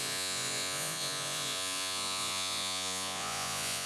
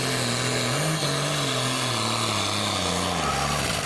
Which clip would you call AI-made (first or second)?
first